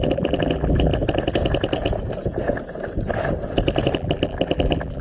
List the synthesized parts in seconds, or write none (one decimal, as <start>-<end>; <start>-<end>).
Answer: 0.0-0.9; 3.9-5.0